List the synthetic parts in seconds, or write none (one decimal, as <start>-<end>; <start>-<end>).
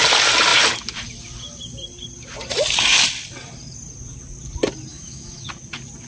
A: 4.9-5.5